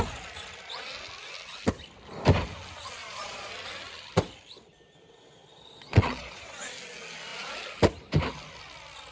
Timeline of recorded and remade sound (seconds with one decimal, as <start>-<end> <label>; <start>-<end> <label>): 0.0-3.0 recorded; 3.0-3.5 remade; 3.5-5.4 recorded; 5.4-6.6 remade; 6.6-9.1 recorded